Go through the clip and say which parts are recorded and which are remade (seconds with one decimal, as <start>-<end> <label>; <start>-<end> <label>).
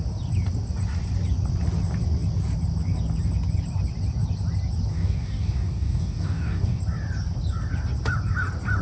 0.0-4.9 recorded; 4.9-6.8 remade; 6.8-8.8 recorded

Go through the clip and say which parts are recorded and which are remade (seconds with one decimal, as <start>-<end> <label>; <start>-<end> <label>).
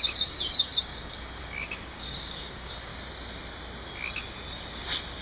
0.0-2.9 remade; 2.9-5.2 recorded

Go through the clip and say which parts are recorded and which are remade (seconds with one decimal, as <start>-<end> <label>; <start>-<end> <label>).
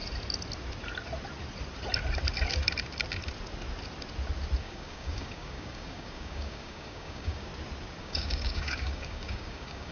0.0-4.6 recorded; 4.6-7.5 remade; 7.5-8.0 recorded; 8.0-9.9 remade